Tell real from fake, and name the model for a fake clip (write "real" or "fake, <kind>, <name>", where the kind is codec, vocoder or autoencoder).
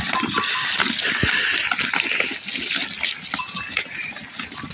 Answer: real